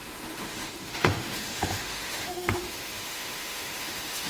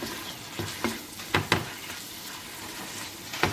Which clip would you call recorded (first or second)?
second